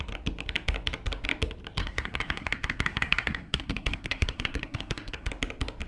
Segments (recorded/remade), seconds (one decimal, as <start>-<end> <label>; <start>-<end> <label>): 0.0-1.8 recorded; 1.8-5.3 remade; 5.3-5.9 recorded